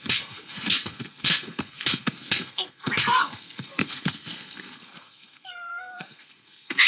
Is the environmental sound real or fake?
fake